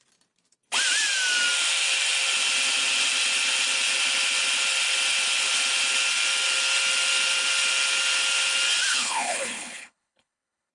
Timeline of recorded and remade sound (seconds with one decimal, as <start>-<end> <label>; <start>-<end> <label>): 0.0-8.9 recorded; 8.9-10.7 remade